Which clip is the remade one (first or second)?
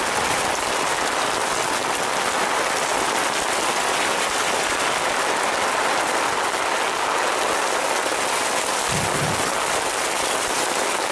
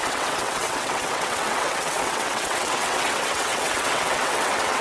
second